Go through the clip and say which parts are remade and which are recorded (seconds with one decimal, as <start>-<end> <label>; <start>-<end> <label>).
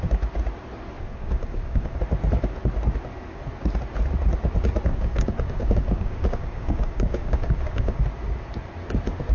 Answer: 0.0-1.0 recorded; 1.0-2.0 remade; 2.0-4.9 recorded; 4.9-8.0 remade; 8.0-9.3 recorded